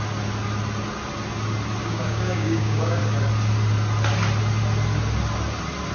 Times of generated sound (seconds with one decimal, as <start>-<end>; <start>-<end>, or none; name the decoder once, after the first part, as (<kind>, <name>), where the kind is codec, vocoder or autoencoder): 1.8-3.0 (codec, DAC)